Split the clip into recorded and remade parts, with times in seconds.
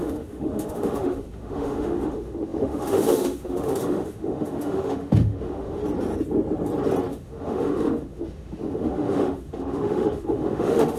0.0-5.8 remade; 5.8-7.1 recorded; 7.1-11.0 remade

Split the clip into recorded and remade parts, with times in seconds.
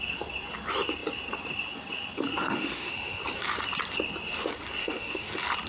0.0-2.4 recorded; 2.4-3.2 remade; 3.2-4.8 recorded; 4.8-5.3 remade; 5.3-5.7 recorded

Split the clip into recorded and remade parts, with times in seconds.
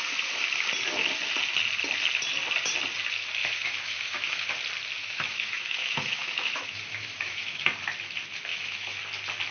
0.0-3.4 recorded; 3.4-4.5 remade; 4.5-5.0 recorded; 5.0-7.6 remade; 7.6-8.5 recorded; 8.5-9.0 remade; 9.0-9.5 recorded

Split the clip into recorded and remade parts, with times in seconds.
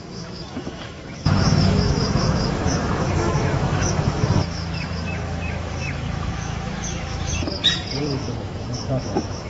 0.0-7.3 remade; 7.3-8.0 recorded; 8.0-9.5 remade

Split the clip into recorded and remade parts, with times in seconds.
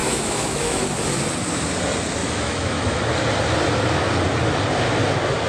0.0-0.8 remade; 0.8-2.2 recorded; 2.2-3.0 remade; 3.0-5.5 recorded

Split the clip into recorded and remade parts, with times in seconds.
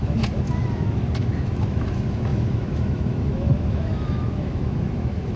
0.0-5.4 remade